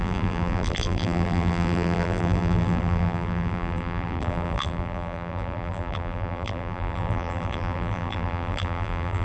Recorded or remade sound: remade